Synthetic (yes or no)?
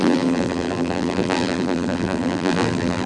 yes